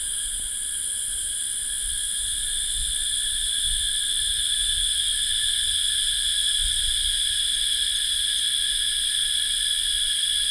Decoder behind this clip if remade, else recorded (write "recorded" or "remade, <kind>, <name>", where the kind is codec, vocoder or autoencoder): recorded